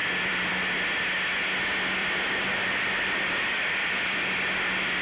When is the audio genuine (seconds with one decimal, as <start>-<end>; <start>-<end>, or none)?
0.6-2.0